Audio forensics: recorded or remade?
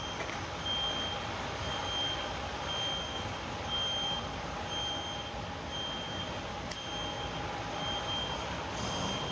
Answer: recorded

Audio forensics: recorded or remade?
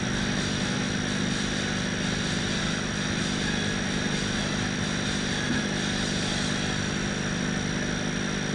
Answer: recorded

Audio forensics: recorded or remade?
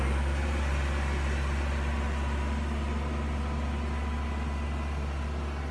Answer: recorded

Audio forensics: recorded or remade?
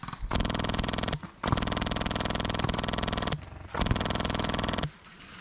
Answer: remade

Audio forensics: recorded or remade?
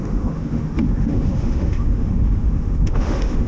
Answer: remade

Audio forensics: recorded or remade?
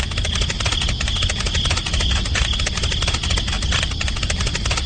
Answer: recorded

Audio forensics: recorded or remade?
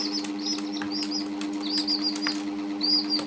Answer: recorded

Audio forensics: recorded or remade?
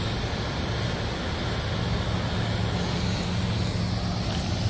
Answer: recorded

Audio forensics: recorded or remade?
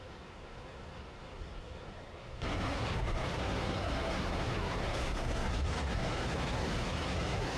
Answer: remade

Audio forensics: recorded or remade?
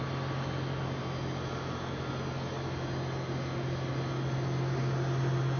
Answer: recorded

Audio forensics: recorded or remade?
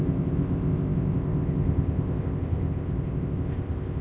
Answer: remade